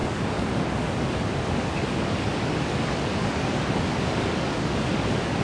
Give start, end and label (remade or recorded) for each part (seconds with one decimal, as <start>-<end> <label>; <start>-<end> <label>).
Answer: 0.0-5.4 remade